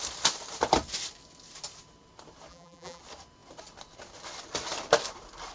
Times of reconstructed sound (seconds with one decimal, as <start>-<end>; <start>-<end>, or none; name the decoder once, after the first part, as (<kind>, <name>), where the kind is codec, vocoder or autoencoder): 2.5-3.0 (vocoder, BigVGAN v2)

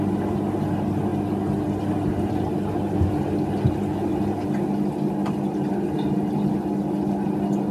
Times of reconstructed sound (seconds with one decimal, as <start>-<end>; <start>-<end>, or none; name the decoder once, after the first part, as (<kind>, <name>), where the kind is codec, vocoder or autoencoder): none

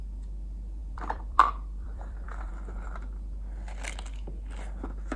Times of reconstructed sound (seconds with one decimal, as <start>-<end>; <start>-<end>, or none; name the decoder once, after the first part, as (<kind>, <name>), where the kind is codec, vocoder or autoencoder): 0.8-2.5 (vocoder, BigVGAN v2)

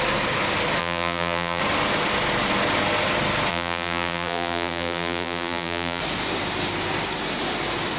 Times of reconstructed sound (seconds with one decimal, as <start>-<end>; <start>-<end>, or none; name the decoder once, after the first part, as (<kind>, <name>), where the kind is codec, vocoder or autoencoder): 0.8-1.6 (vocoder, BigVGAN v2); 3.5-6.0

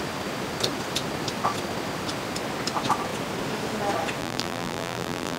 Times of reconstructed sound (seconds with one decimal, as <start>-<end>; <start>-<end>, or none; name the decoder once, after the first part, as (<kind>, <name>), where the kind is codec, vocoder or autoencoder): 4.2-5.4 (vocoder, BigVGAN v2)

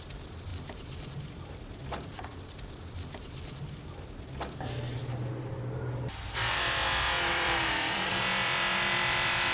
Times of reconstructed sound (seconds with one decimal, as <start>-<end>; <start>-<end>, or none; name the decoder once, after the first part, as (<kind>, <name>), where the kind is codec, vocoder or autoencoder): 0.0-0.5 (vocoder, BigVGAN v2); 1.2-2.3; 7.3-9.5